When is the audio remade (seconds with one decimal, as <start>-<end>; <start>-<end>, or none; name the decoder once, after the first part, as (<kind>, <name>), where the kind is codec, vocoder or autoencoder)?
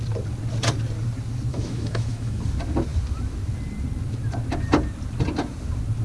1.5-2.4 (autoencoder, DAC-VAE)